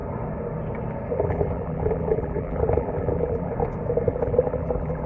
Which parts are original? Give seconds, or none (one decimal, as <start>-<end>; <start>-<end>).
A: 0.0-1.1; 3.5-4.1